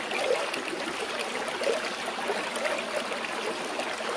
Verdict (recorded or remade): recorded